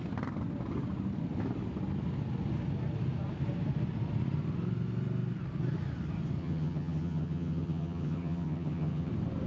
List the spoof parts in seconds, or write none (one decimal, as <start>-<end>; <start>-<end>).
6.4-9.1